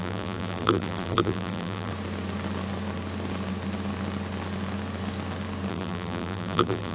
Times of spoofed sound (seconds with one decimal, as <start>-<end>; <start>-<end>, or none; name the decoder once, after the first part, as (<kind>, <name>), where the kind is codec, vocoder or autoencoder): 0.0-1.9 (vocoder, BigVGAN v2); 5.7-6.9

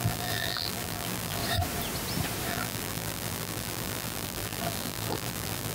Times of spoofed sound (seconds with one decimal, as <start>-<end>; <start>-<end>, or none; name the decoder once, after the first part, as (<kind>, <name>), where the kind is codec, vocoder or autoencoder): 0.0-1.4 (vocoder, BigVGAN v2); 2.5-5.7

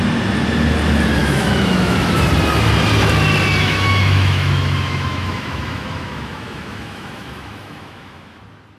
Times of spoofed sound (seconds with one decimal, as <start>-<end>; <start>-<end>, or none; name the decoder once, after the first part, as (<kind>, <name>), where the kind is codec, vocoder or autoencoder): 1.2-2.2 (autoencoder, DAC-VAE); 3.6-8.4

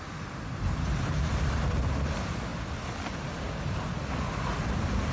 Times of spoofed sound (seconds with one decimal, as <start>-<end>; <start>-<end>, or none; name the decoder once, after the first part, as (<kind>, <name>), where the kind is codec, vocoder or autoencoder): none